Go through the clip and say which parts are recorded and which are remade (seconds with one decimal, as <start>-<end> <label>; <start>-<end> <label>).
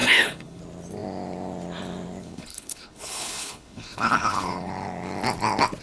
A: 0.0-0.6 remade; 0.6-2.2 recorded; 2.2-4.7 remade; 4.7-5.8 recorded